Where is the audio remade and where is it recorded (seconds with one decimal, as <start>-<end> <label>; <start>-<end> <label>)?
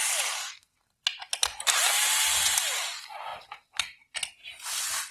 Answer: 0.0-0.4 recorded; 0.4-0.9 remade; 0.9-5.1 recorded